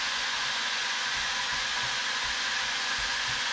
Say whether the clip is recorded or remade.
remade